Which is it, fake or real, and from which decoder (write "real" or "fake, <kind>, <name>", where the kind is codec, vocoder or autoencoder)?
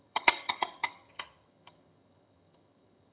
fake, vocoder, HiFi-GAN